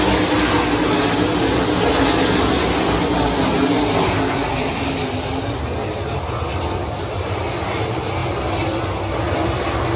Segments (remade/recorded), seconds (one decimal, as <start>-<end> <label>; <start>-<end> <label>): 0.0-10.0 recorded